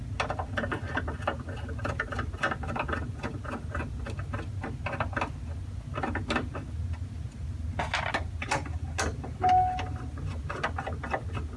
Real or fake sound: real